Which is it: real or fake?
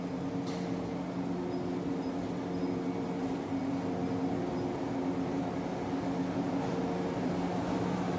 real